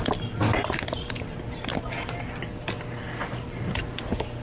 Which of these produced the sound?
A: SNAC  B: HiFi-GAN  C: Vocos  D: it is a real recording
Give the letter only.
D